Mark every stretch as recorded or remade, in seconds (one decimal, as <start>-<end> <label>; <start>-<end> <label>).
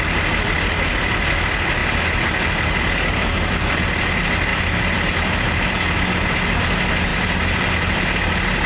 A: 0.0-8.7 recorded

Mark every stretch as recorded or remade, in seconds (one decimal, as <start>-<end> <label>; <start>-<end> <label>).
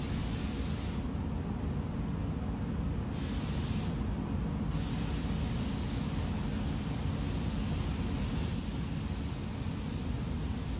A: 0.0-10.8 recorded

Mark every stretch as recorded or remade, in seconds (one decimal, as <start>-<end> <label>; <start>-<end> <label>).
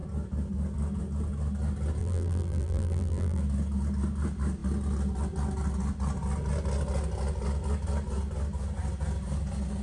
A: 0.0-2.0 recorded; 2.0-3.4 remade; 3.4-9.8 recorded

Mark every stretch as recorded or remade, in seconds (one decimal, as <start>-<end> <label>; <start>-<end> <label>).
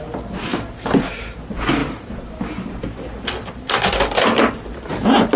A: 0.0-5.4 recorded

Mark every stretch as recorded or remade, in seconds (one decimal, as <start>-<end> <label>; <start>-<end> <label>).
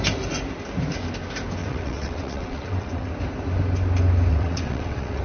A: 0.0-1.6 recorded; 1.6-3.1 remade; 3.1-4.3 recorded; 4.3-5.2 remade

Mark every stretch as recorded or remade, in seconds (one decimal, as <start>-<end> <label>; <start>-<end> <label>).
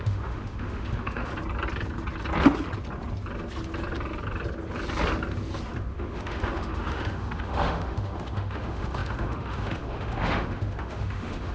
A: 0.0-1.3 remade; 1.3-5.8 recorded; 5.8-11.5 remade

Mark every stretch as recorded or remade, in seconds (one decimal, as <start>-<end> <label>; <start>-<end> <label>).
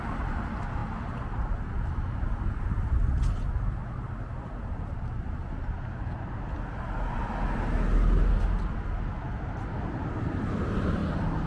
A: 0.0-11.0 recorded; 11.0-11.5 remade